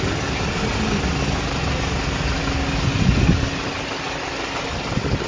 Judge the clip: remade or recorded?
recorded